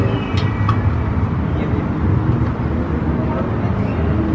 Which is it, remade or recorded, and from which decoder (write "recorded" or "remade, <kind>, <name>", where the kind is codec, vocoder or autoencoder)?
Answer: recorded